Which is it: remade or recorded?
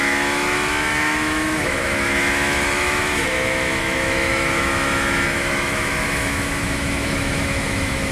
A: remade